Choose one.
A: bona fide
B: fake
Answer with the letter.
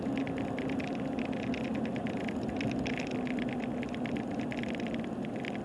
A